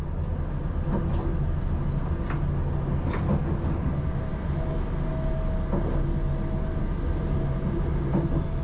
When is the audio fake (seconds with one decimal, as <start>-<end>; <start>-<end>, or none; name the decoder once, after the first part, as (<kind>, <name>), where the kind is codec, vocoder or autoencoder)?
none